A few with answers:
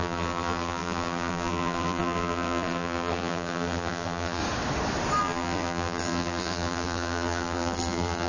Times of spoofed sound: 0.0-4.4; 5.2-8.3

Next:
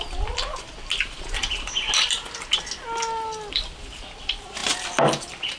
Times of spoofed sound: none

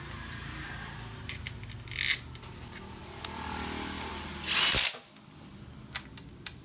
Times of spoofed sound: none

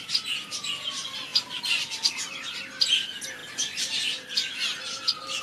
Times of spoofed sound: none